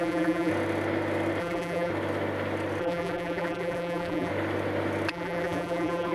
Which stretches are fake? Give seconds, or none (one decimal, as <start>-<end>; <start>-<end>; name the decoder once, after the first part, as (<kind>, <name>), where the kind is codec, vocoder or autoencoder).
0.0-0.5 (vocoder, BigVGAN v2); 1.4-1.9; 2.8-4.3; 5.1-6.1

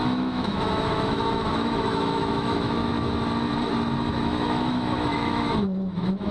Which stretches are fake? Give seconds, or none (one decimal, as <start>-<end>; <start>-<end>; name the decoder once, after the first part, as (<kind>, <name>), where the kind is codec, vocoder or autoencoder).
0.0-2.9 (autoencoder, DAC-VAE); 4.1-6.3

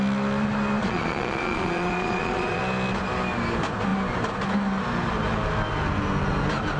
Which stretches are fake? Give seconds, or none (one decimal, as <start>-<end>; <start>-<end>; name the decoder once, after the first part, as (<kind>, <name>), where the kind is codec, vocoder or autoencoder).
0.8-2.6 (vocoder, Vocos)

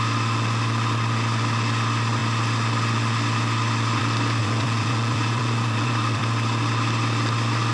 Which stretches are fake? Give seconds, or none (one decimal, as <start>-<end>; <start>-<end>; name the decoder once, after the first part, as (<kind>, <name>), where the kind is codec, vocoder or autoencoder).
4.4-6.2 (vocoder, Vocos)

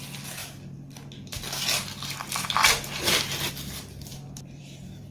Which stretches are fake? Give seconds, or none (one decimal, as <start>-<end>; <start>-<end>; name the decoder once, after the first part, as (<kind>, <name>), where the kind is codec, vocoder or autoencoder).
4.1-5.1 (vocoder, BigVGAN v2)

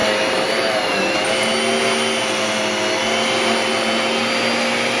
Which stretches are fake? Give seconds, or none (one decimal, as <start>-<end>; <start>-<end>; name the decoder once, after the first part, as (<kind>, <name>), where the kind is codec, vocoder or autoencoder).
none

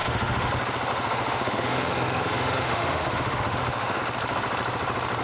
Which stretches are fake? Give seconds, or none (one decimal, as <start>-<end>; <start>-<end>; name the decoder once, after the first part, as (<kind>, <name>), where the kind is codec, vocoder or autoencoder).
0.0-0.5 (autoencoder, DAC-VAE); 0.9-4.0

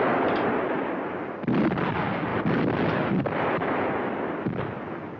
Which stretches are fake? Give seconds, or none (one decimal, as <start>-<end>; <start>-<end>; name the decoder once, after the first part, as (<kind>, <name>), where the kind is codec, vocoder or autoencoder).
none